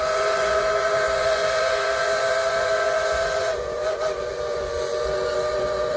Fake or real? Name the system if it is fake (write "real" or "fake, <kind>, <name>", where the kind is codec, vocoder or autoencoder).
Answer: fake, vocoder, Vocos